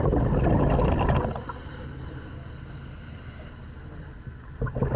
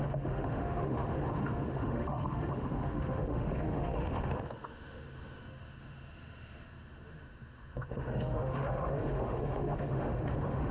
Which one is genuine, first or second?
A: first